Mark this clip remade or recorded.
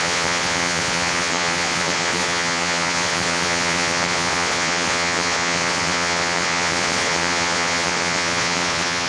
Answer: remade